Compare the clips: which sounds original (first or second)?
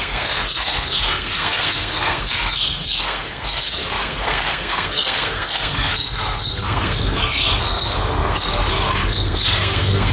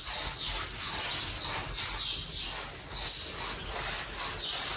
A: second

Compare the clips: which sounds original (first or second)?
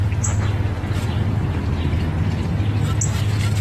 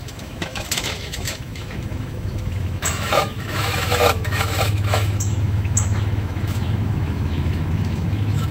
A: first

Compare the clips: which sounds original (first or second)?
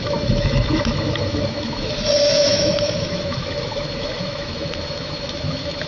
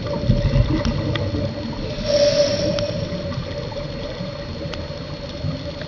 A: second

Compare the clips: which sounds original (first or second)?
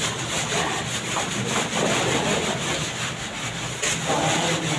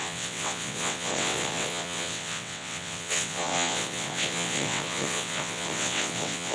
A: first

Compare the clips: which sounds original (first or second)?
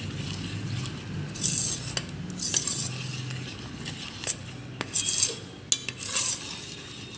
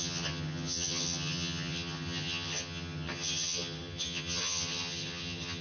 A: first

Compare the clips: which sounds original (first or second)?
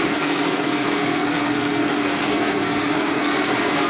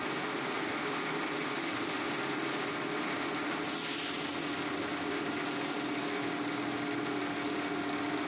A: second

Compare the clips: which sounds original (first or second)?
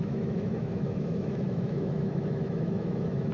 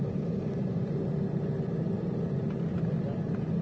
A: second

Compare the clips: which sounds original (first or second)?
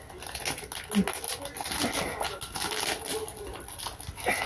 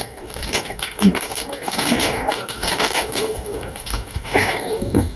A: first